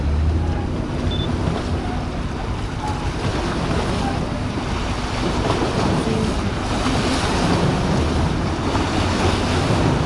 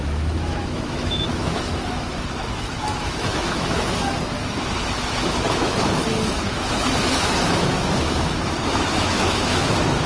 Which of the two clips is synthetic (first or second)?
second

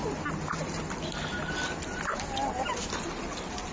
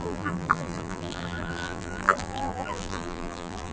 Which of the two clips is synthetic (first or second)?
second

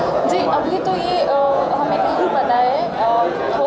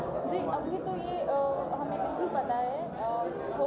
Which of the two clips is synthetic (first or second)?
first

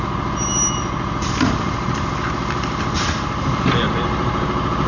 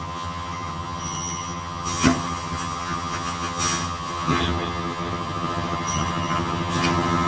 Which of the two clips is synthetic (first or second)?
second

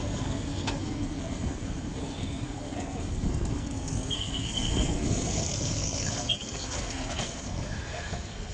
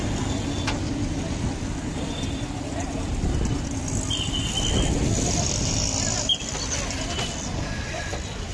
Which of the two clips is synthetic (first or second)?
first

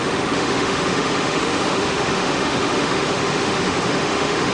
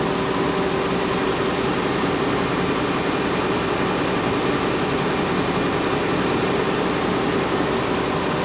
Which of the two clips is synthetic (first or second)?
first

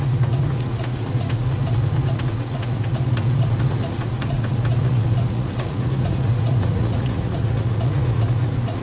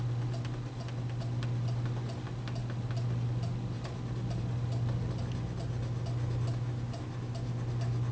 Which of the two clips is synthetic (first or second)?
first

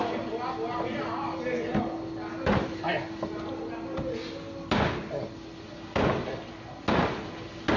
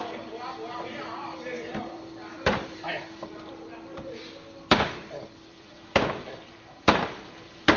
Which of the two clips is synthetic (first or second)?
second